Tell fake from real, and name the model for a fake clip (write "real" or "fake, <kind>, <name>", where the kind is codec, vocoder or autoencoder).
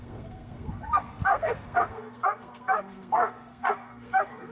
fake, codec, SNAC